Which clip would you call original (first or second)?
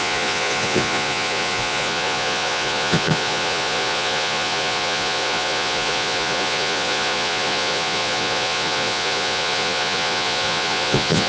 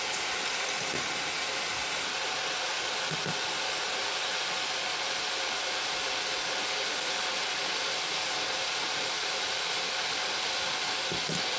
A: second